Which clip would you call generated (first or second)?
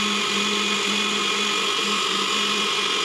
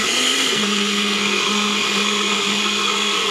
second